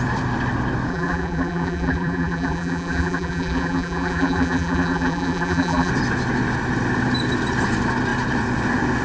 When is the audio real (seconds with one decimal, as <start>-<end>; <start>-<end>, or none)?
0.0-0.9; 5.9-9.0